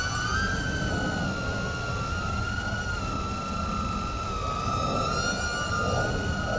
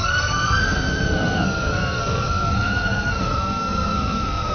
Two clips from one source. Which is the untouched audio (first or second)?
first